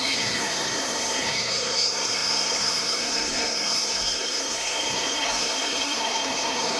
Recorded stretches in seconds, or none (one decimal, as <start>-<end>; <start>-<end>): none